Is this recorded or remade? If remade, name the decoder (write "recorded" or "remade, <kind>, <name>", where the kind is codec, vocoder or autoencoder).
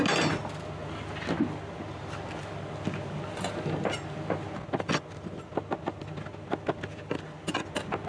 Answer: recorded